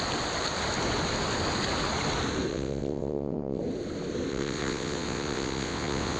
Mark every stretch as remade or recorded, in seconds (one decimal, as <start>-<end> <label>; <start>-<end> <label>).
0.0-2.5 recorded; 2.5-3.6 remade; 3.6-4.3 recorded; 4.3-6.2 remade